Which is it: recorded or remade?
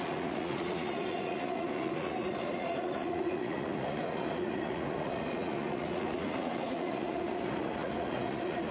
remade